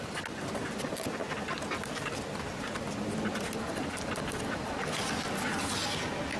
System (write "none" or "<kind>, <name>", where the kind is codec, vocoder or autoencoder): none